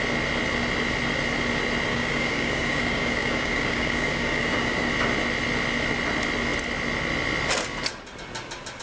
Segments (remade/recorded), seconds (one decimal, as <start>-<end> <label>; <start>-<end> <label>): 0.0-1.9 recorded; 1.9-4.9 remade; 4.9-8.8 recorded